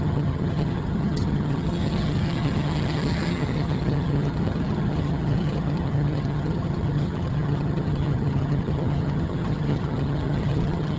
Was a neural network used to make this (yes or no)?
yes